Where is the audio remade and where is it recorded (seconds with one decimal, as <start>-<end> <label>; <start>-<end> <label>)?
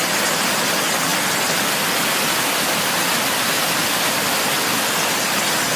0.0-5.8 recorded